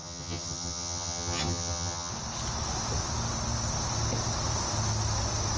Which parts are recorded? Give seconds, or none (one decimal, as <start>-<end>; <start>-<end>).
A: 2.1-5.6